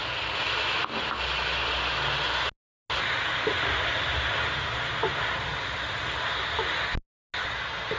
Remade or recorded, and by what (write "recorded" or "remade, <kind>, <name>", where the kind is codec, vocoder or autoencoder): recorded